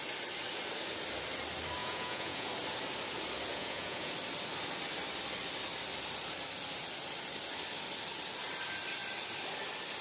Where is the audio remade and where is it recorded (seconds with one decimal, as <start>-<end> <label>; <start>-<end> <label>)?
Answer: 0.0-1.8 recorded; 1.8-2.5 remade; 2.5-3.5 recorded; 3.5-4.1 remade; 4.1-10.0 recorded